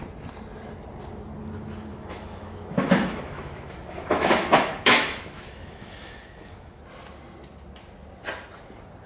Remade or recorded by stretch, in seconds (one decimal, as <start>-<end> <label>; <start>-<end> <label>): 0.0-1.9 recorded; 1.9-6.8 remade; 6.8-9.1 recorded